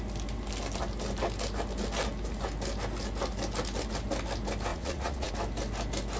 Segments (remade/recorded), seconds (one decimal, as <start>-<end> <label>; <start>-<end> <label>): 0.0-4.7 recorded; 4.7-5.3 remade; 5.3-6.2 recorded